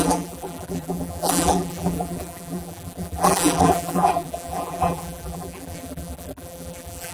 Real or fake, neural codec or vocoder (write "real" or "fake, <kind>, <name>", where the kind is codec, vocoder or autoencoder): fake, vocoder, BigVGAN v2